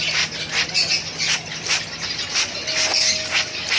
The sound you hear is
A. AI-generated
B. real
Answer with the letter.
B